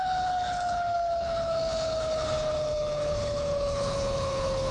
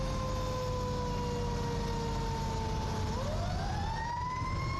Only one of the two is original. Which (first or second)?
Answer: second